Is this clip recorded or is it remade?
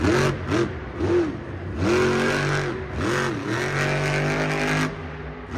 recorded